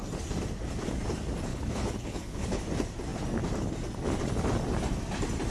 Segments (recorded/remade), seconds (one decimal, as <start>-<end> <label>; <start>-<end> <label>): 0.0-1.5 recorded; 1.5-2.6 remade; 2.6-5.5 recorded